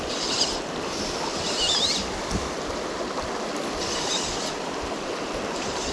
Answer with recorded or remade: recorded